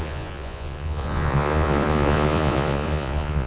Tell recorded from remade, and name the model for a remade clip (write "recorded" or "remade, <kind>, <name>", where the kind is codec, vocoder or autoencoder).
remade, vocoder, Vocos